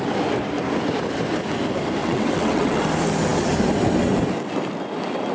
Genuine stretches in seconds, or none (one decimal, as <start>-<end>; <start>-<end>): 0.0-2.0; 2.8-5.3